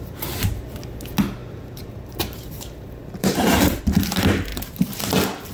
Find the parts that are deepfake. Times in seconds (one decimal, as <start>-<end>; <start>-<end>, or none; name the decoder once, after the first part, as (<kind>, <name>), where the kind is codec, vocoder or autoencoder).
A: 1.4-3.8 (vocoder, BigVGAN v2)